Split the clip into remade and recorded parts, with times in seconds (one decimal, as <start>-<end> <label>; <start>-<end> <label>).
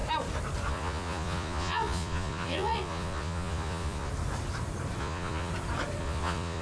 0.0-0.7 recorded; 0.7-4.1 remade; 4.1-5.0 recorded; 5.0-5.5 remade; 5.5-6.0 recorded; 6.0-6.6 remade